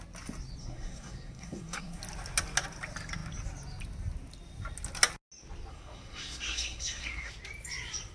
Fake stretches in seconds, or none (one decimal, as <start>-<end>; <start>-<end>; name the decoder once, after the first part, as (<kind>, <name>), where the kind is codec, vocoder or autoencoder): 0.6-2.0 (codec, SNAC); 5.7-7.3